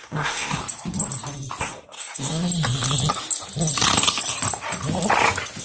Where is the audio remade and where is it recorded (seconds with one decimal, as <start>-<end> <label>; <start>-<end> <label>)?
0.0-0.6 remade; 0.6-1.6 recorded; 1.6-2.5 remade; 2.5-5.6 recorded

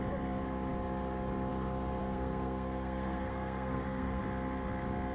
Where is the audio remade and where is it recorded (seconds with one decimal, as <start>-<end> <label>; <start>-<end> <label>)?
0.0-2.0 recorded; 2.0-4.2 remade; 4.2-5.1 recorded